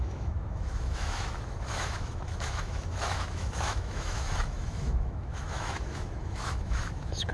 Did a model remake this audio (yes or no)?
yes